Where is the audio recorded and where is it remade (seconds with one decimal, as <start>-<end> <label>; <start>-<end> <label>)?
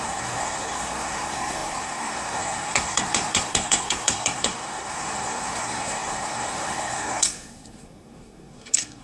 0.0-9.0 remade